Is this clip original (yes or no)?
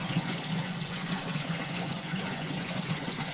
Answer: no